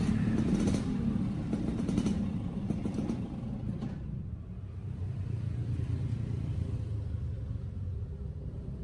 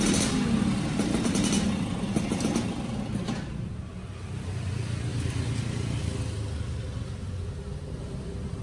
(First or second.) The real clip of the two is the second